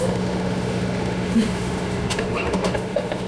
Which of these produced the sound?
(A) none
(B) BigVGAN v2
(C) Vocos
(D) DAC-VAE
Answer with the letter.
D